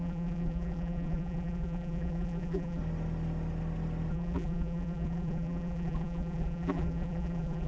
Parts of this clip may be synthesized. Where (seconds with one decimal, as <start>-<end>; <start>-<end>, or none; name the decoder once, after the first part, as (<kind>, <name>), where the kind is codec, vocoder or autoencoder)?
0.0-2.8 (vocoder, BigVGAN v2); 4.1-7.7